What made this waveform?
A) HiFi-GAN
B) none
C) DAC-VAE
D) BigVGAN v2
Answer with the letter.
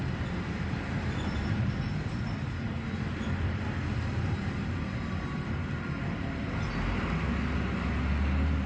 B